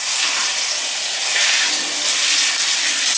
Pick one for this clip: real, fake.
real